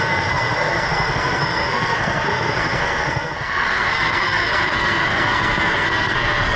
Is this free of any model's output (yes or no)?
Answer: no